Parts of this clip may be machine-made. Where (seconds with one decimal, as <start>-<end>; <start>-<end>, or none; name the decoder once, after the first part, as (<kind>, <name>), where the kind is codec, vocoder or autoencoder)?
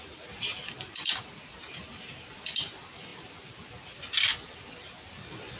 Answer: none